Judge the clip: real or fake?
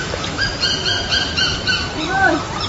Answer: real